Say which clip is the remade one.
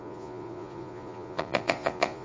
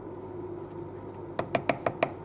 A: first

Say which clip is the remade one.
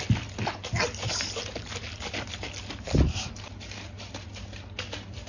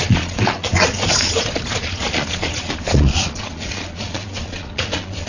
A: second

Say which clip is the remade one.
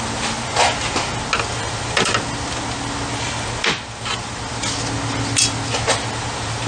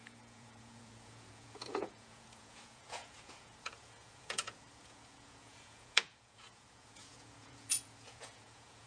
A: second